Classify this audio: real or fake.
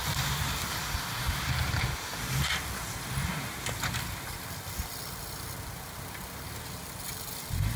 real